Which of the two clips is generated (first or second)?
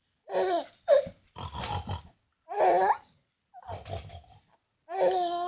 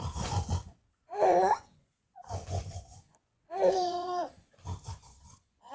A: second